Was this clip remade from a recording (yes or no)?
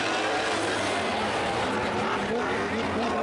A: no